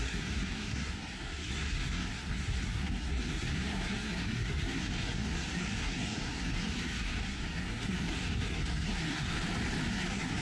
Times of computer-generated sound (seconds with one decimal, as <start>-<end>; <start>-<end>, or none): 0.0-9.3; 9.9-10.4